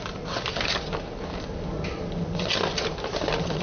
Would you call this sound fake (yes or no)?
no